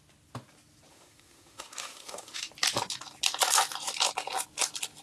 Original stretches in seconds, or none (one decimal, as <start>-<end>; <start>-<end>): 0.0-0.9; 2.5-5.0

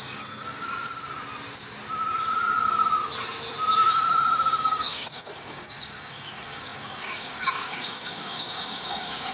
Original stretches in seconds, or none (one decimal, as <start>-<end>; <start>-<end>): 0.7-4.6

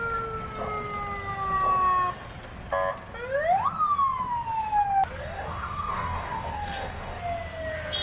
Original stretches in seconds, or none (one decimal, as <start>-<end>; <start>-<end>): 0.0-5.2; 7.2-8.0

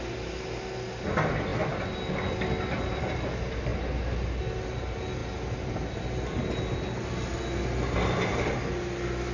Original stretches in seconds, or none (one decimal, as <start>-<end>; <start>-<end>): 0.0-9.3